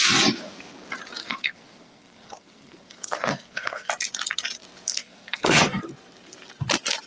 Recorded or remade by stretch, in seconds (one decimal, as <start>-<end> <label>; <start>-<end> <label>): 0.0-1.2 recorded; 1.2-3.9 remade; 3.9-4.9 recorded; 4.9-5.8 remade; 5.8-7.1 recorded